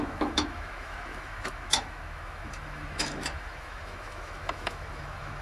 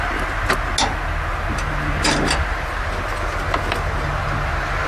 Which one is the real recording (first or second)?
second